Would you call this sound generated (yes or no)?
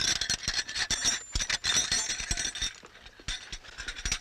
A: no